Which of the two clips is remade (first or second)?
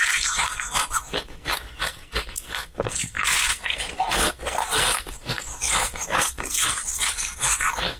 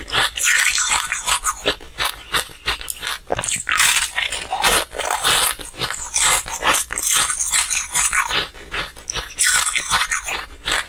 first